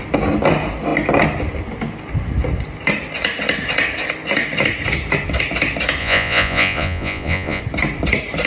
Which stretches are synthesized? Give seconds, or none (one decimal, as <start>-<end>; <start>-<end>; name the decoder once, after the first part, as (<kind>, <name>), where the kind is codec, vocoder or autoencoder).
6.0-7.6 (vocoder, Vocos)